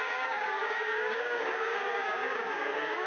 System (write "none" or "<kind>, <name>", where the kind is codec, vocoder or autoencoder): codec, DAC